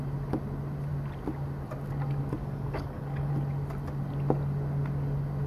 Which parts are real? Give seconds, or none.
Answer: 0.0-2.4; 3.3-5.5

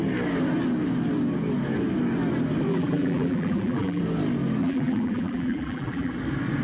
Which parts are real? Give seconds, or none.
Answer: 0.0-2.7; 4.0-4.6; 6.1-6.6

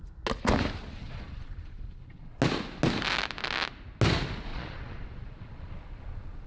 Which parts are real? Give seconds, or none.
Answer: 0.0-1.0; 2.4-4.5

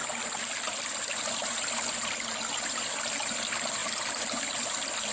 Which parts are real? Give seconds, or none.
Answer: 2.9-3.8

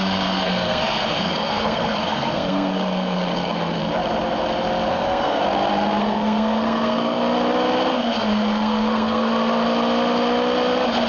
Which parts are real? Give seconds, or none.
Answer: 3.8-4.9; 5.4-6.0; 7.2-7.9; 9.3-11.1

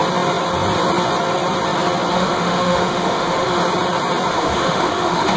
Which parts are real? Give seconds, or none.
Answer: 0.0-2.1; 3.6-4.3